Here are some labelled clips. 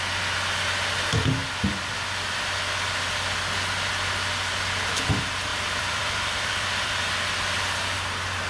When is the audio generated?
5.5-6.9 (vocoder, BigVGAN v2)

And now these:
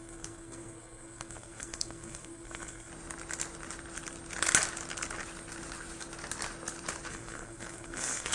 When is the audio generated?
0.0-2.9 (codec, SNAC); 7.1-8.3

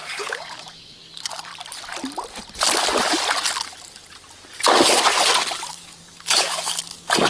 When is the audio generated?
0.0-1.5 (codec, DAC); 5.7-7.3

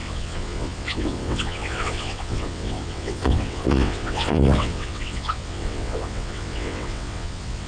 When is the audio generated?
0.0-7.7 (vocoder, WaveNeXt)